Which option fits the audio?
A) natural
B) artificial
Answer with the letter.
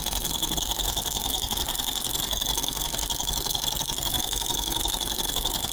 B